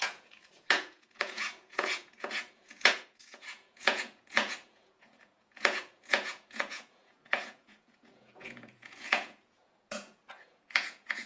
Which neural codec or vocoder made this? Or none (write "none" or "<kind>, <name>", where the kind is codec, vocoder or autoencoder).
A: vocoder, Vocos